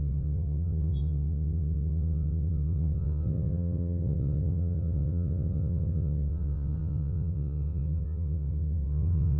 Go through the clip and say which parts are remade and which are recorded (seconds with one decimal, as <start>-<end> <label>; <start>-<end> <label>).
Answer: 0.0-9.4 remade